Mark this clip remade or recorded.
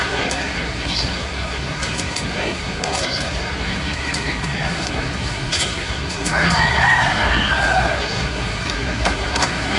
remade